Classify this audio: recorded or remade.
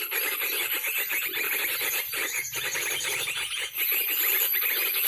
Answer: remade